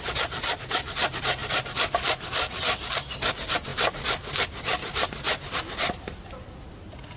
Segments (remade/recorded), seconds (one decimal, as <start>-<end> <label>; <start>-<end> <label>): 0.0-7.2 recorded